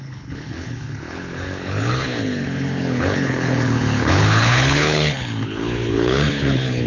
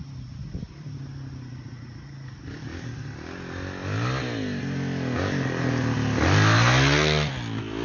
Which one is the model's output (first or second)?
first